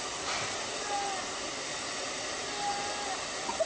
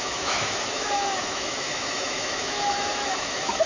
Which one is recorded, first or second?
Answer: first